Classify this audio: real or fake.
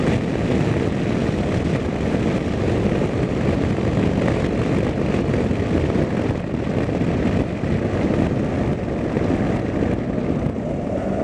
real